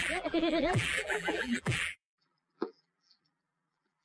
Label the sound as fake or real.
fake